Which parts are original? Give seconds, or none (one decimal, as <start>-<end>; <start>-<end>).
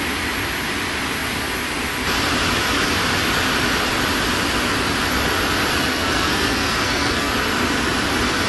0.0-5.7; 7.3-8.5